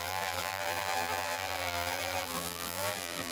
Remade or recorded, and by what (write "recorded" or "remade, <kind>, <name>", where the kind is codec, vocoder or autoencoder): remade, vocoder, BigVGAN v2